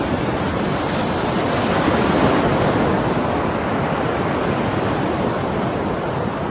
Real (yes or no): yes